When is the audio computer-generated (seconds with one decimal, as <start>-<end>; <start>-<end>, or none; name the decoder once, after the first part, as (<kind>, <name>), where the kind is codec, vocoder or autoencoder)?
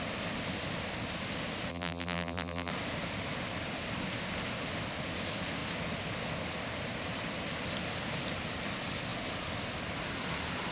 1.7-2.7 (vocoder, BigVGAN v2)